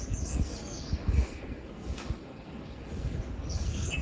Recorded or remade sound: remade